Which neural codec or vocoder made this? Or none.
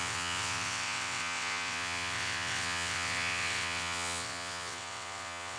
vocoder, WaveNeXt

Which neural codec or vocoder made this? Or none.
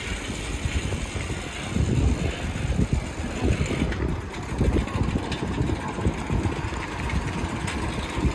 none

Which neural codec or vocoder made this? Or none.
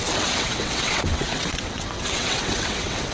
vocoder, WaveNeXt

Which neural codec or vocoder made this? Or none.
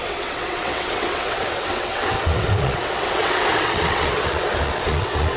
vocoder, WaveNeXt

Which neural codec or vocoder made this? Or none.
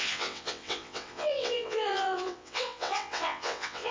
vocoder, WaveNeXt